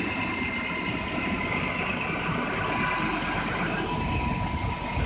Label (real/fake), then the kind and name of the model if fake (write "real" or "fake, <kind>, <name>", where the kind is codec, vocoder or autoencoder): real